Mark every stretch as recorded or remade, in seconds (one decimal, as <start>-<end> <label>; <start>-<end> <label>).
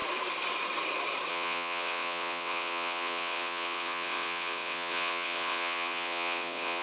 0.0-1.3 recorded; 1.3-6.8 remade